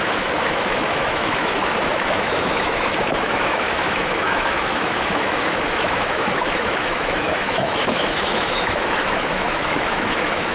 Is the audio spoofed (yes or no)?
yes